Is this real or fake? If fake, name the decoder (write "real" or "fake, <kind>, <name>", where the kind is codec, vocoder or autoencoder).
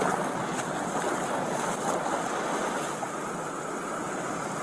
real